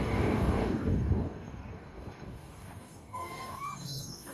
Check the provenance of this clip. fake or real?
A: fake